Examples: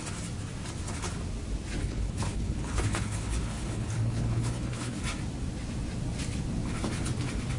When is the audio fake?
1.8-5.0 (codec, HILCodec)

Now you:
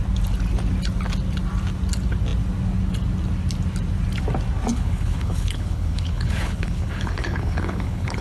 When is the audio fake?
4.7-8.2 (codec, HILCodec)

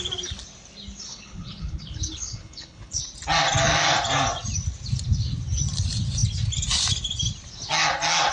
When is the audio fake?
1.1-3.0 (codec, HILCodec)

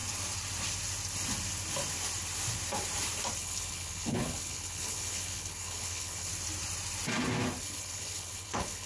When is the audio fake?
3.4-6.3 (codec, HILCodec); 7.6-8.9

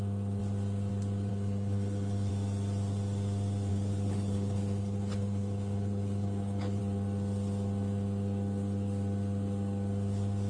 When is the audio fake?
1.3-2.3 (codec, HILCodec); 3.7-6.8

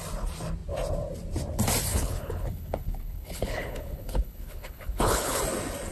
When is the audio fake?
1.9-5.4 (codec, HILCodec)

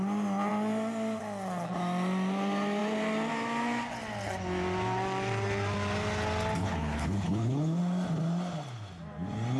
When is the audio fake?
6.6-7.8 (codec, HILCodec)

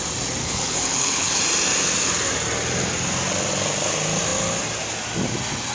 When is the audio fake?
0.4-1.4 (codec, HILCodec)